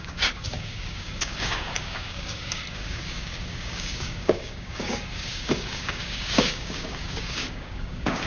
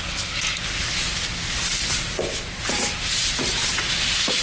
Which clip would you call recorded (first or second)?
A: second